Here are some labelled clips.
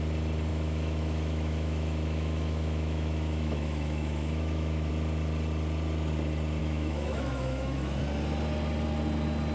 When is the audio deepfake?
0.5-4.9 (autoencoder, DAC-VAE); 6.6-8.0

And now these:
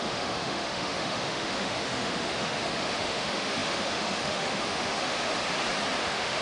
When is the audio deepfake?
0.0-5.4 (autoencoder, DAC-VAE); 6.0-6.4

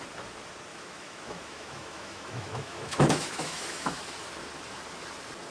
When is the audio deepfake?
0.7-4.0 (autoencoder, DAC-VAE)

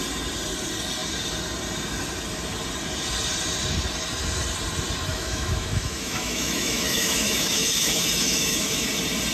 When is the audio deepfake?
5.1-8.9 (autoencoder, DAC-VAE)